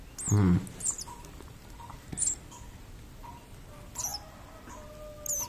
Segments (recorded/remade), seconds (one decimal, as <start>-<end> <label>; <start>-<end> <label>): 0.0-5.5 recorded